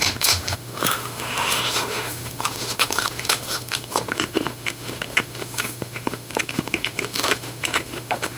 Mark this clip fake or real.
fake